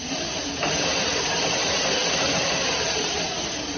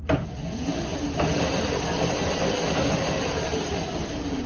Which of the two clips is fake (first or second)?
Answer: first